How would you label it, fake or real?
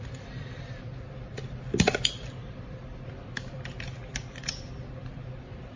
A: fake